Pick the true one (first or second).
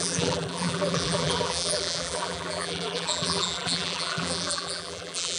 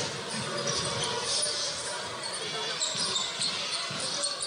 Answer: second